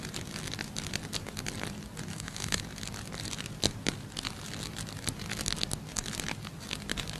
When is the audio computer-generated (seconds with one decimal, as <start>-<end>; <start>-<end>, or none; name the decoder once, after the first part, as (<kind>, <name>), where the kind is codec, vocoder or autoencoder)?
2.1-2.6 (codec, DAC)